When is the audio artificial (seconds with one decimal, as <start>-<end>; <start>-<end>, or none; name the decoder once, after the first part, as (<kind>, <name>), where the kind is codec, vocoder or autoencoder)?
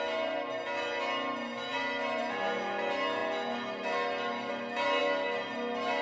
none